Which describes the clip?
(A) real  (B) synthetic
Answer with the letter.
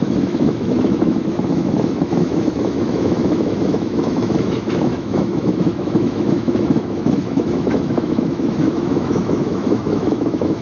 B